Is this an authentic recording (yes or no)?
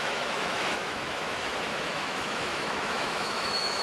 no